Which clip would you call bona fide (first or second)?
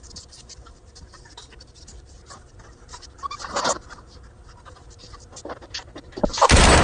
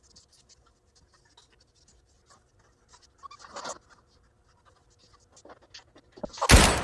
second